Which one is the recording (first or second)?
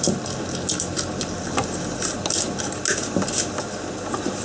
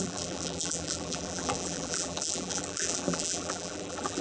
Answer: first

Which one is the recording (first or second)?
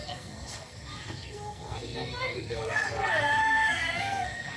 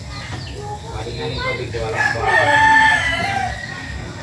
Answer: second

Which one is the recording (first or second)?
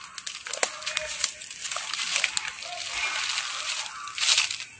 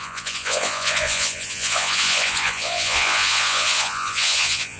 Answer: first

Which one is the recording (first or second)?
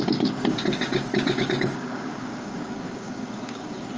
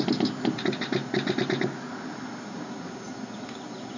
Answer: second